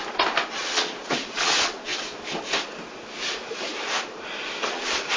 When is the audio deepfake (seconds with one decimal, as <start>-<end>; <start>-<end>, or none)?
0.6-1.9; 4.7-5.2